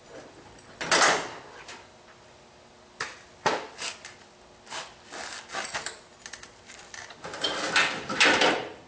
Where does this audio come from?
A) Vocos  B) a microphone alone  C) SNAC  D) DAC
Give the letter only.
B